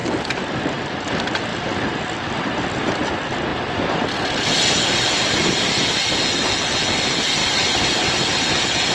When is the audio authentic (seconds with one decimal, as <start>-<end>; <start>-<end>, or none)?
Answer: 1.1-1.5; 2.0-7.4; 8.5-8.9